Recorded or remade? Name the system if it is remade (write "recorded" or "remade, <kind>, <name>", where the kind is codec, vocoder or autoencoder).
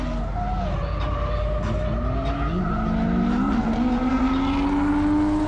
recorded